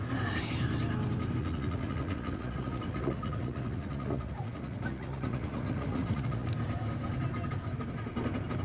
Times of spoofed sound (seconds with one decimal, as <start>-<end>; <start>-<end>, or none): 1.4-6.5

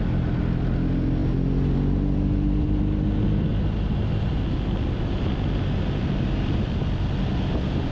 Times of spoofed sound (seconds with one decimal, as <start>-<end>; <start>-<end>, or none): none

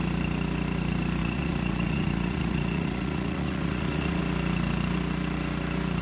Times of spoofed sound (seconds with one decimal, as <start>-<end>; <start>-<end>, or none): 1.2-4.2

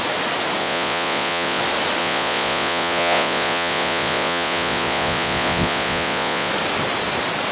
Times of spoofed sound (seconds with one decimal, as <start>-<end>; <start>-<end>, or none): 0.6-1.6; 2.0-6.5